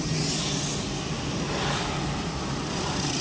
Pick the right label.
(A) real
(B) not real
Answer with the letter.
A